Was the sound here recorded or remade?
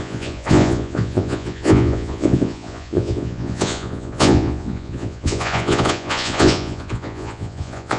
remade